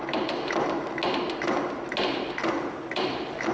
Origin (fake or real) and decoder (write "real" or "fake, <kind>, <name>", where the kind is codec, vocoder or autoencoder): real